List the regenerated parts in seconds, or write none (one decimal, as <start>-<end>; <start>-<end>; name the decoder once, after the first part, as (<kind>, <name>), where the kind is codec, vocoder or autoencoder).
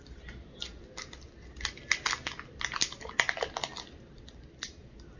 none